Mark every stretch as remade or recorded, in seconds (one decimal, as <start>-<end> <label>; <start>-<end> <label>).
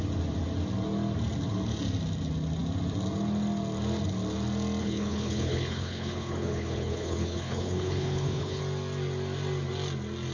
0.0-4.8 recorded; 4.8-8.6 remade; 8.6-10.3 recorded